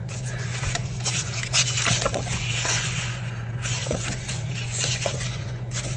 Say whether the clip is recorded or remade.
remade